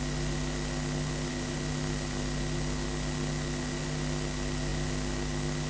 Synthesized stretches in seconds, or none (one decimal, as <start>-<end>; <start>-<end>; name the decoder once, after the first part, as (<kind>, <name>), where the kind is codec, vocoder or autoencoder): none